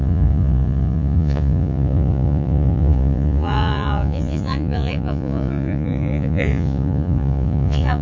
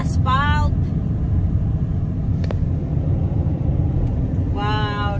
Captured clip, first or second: second